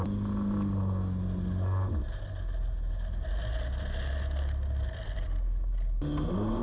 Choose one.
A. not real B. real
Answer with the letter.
B